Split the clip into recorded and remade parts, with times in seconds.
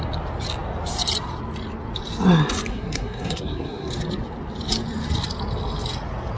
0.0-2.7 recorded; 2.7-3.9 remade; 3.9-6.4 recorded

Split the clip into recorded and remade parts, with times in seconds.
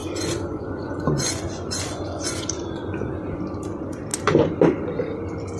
0.0-3.4 remade; 3.4-5.6 recorded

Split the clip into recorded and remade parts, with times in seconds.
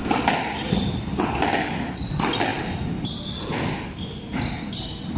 0.0-2.5 recorded; 2.5-3.1 remade; 3.1-5.2 recorded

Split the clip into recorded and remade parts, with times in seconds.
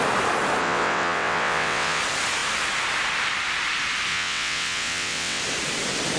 0.0-0.6 recorded; 0.6-2.0 remade; 2.0-4.1 recorded; 4.1-5.4 remade; 5.4-6.2 recorded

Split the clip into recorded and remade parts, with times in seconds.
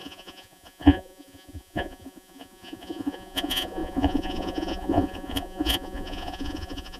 0.0-7.0 remade